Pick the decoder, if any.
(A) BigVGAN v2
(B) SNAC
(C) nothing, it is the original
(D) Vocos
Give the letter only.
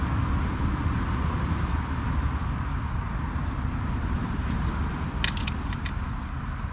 C